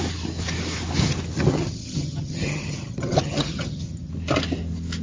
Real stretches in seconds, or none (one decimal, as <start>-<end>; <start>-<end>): 0.0-1.5; 4.1-5.0

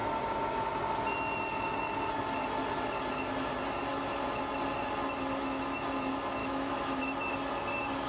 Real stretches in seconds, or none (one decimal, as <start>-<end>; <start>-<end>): 0.0-6.4; 7.0-8.1

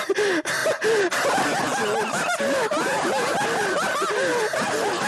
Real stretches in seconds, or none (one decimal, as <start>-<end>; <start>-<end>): 0.0-5.1